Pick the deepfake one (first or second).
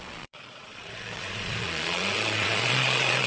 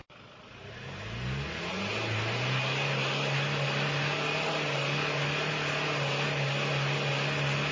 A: first